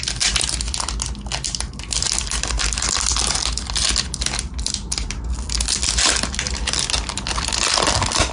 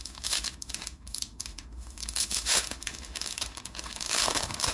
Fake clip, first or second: second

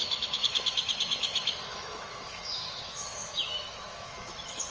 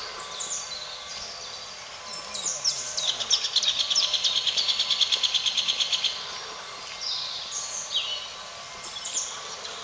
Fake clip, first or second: first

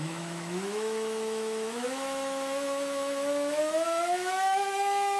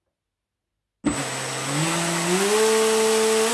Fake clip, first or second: first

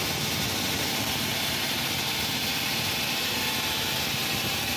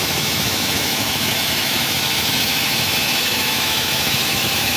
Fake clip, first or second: second